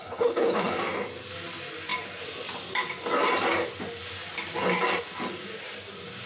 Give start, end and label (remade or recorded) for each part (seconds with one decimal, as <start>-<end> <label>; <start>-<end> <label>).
0.0-0.8 remade; 0.8-6.3 recorded